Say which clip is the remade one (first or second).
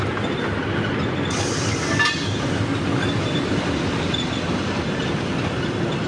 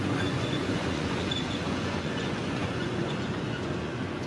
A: second